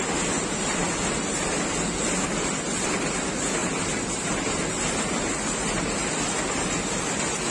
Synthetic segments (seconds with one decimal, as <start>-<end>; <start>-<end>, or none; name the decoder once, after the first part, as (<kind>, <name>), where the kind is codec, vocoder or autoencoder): none